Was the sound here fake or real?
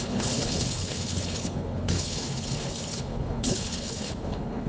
fake